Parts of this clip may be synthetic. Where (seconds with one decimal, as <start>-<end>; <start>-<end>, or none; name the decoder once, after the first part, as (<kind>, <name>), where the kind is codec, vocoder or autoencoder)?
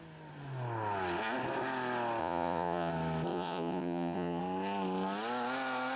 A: 2.2-2.9 (vocoder, Vocos); 3.3-4.4